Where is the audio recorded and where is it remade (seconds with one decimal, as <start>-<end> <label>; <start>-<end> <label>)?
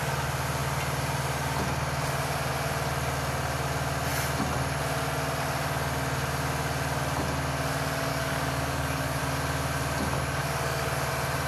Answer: 0.0-8.1 recorded; 8.1-9.2 remade; 9.2-10.4 recorded; 10.4-11.1 remade; 11.1-11.5 recorded